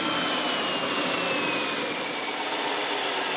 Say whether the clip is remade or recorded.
recorded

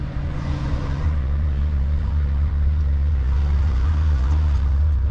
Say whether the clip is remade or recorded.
remade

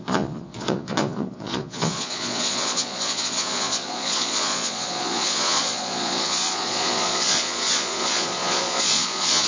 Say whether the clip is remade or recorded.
remade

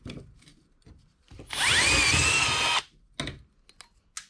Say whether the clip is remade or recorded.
recorded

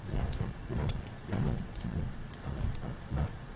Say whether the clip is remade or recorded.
remade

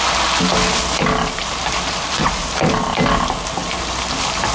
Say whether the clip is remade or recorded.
recorded